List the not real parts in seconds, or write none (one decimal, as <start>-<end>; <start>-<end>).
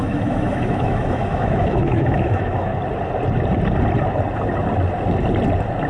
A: 0.0-2.7